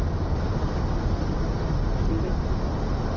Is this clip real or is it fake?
real